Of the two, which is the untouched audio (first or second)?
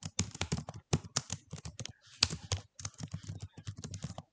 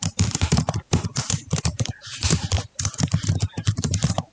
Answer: first